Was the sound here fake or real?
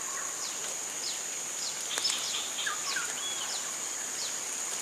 real